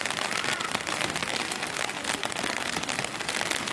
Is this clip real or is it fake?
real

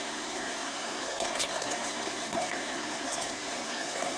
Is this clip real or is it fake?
fake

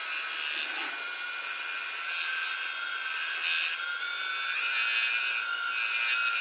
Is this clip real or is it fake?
real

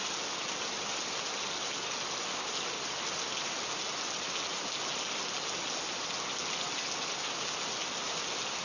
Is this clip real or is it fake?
real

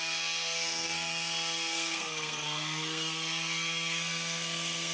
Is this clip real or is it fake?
fake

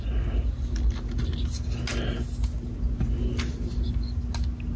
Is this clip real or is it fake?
real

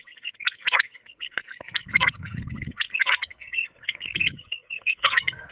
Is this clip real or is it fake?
fake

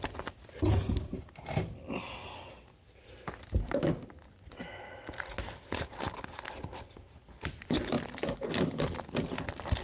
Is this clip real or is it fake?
real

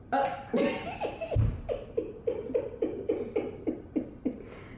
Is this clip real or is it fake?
real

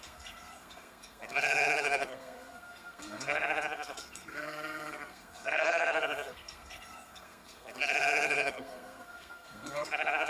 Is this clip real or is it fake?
fake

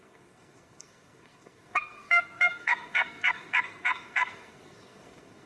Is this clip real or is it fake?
fake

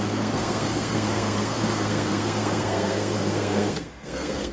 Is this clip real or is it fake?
fake